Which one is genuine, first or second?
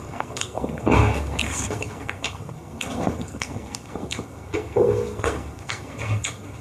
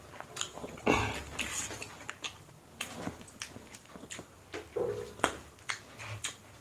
second